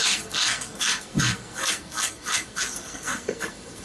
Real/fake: fake